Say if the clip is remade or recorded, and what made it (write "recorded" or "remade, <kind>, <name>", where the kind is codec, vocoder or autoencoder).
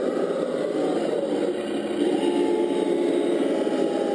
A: recorded